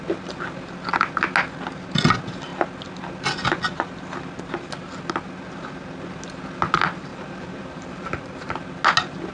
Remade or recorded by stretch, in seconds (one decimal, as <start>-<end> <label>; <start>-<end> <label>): 0.0-7.1 recorded; 7.1-8.5 remade; 8.5-9.3 recorded